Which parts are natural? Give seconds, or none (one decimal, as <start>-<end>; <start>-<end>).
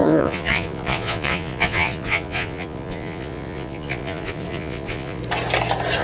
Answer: 5.2-6.0